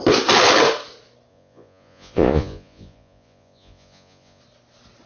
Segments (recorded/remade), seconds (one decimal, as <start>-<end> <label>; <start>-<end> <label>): 0.0-1.3 recorded; 1.3-4.4 remade; 4.4-5.1 recorded